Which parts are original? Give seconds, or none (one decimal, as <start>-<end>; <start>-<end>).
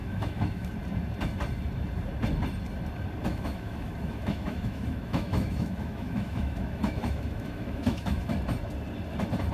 0.7-3.3; 8.3-9.5